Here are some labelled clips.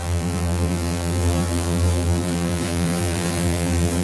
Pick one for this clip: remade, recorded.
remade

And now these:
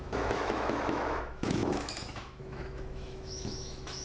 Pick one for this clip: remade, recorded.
remade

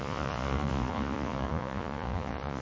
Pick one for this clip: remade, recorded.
remade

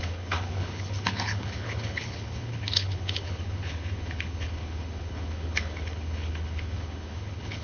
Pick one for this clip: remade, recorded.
remade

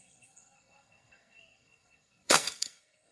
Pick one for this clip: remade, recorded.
remade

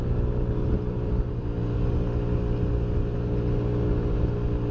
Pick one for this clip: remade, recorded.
recorded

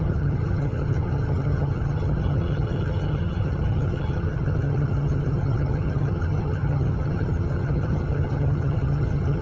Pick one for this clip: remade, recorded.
remade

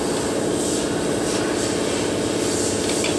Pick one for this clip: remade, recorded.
recorded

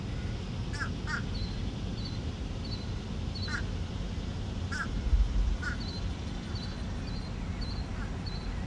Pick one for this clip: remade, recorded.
recorded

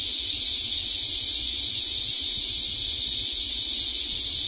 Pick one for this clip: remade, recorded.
recorded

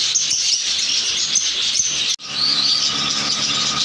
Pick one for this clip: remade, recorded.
recorded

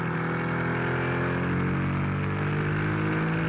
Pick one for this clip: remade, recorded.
recorded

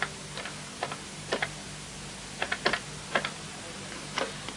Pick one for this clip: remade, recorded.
recorded